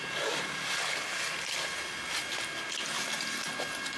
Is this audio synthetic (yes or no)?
no